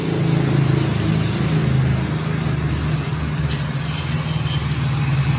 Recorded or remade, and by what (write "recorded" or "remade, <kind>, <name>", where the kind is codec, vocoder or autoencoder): recorded